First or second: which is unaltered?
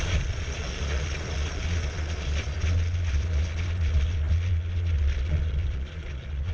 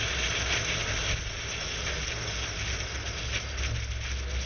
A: second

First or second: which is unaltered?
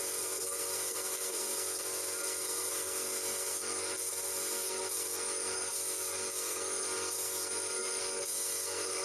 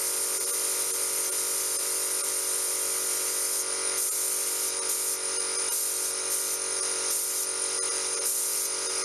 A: second